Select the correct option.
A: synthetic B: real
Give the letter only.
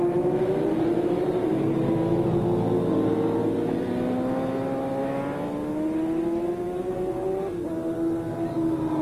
B